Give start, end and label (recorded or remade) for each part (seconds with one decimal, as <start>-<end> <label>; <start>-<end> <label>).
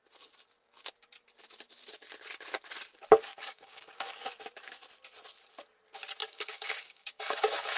0.0-3.3 recorded; 3.3-4.2 remade; 4.2-6.2 recorded; 6.2-7.8 remade